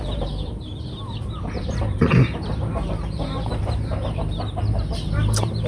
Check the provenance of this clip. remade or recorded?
remade